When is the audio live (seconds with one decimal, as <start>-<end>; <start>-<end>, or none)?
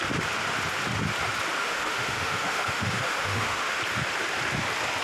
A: 0.0-1.6; 3.8-5.0